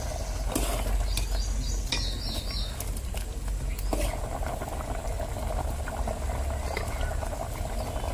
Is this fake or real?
real